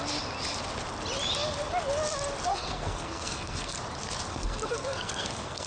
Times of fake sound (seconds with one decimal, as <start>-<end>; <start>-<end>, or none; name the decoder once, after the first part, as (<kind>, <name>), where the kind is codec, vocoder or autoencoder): 2.5-3.8 (codec, SNAC); 4.3-5.7